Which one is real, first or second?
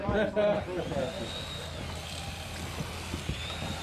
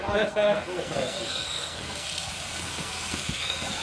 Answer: first